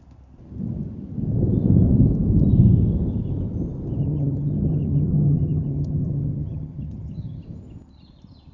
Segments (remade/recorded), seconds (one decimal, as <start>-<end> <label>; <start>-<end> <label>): 0.0-4.0 recorded; 4.0-7.4 remade; 7.4-8.5 recorded

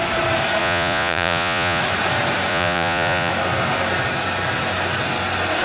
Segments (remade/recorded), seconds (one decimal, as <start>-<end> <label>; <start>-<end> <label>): 0.0-0.6 recorded; 0.6-1.8 remade; 1.8-2.5 recorded; 2.5-3.3 remade; 3.3-5.6 recorded

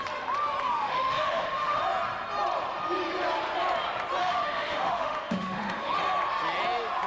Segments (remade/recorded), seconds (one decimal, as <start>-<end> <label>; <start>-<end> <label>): 0.0-0.7 recorded; 0.7-1.8 remade; 1.8-4.2 recorded; 4.2-6.0 remade; 6.0-7.1 recorded

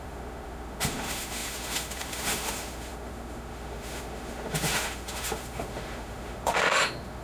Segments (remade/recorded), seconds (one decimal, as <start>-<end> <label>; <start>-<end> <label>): 0.0-7.2 remade